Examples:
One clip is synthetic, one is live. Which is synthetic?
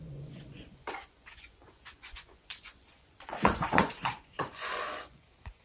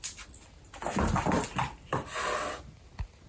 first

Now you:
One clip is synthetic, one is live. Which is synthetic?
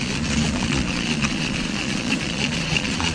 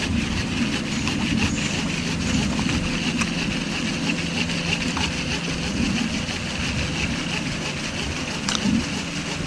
first